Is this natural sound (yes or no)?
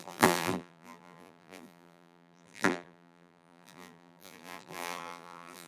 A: no